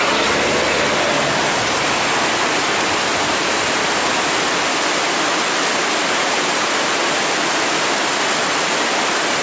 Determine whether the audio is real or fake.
real